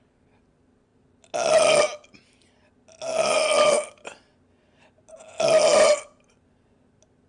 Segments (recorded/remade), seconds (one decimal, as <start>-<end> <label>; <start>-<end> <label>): 0.0-7.3 recorded